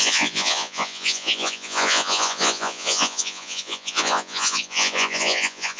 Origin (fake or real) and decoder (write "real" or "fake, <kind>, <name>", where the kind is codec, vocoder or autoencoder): fake, vocoder, Vocos